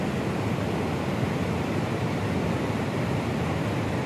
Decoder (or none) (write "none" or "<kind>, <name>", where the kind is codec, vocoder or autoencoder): vocoder, BigVGAN v2